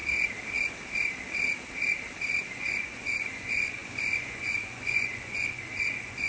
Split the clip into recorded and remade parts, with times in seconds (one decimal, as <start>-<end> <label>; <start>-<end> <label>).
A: 0.0-2.5 recorded; 2.5-6.3 remade